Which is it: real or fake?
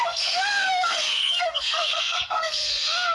fake